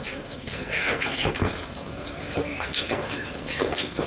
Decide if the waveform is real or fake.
fake